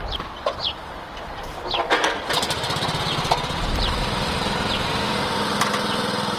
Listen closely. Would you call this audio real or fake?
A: fake